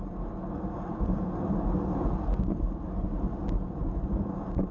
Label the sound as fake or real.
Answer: real